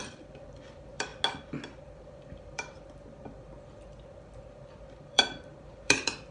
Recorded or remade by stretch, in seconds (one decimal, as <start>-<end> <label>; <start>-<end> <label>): 0.0-1.1 remade; 1.1-1.8 recorded; 1.8-6.3 remade